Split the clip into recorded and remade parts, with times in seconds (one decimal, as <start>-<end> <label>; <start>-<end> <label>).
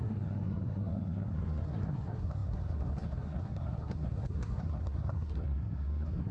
0.0-6.3 remade